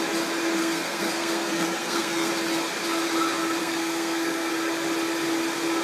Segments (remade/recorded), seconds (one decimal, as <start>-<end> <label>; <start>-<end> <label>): 0.0-0.6 recorded; 0.6-2.3 remade; 2.3-3.6 recorded; 3.6-4.5 remade; 4.5-5.8 recorded